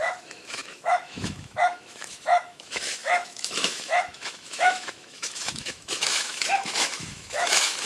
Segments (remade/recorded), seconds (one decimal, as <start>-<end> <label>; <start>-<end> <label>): 0.0-7.9 remade